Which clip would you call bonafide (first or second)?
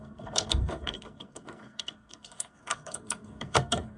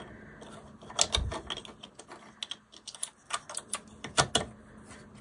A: second